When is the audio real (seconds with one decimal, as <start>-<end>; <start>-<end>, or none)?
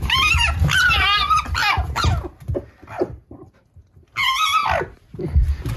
0.0-5.8